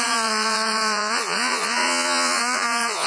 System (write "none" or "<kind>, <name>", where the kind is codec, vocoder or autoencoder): vocoder, Vocos